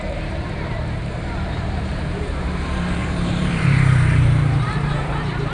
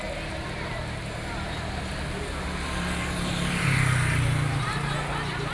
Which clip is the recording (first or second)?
second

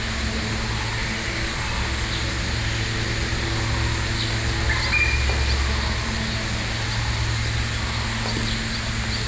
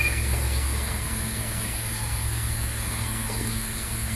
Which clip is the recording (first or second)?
first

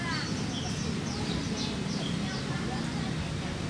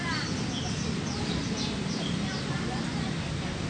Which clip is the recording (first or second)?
first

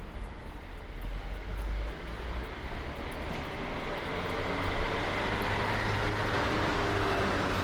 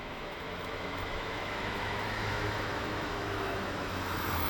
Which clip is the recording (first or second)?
first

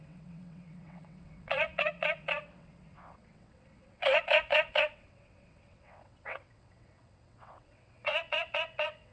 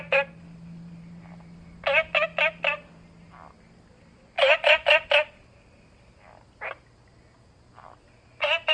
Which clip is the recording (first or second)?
second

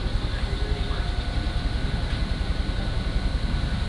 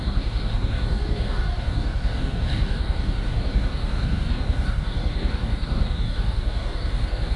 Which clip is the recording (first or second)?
first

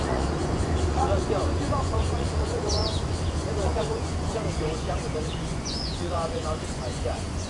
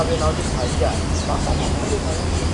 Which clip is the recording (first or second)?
second